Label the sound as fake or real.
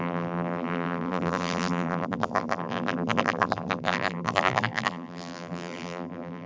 fake